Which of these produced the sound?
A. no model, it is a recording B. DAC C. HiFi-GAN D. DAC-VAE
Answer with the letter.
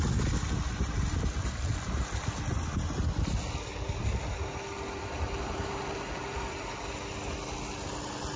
A